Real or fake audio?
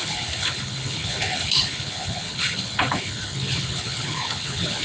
fake